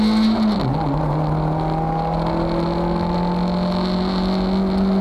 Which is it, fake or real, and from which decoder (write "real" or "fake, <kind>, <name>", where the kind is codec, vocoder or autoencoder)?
real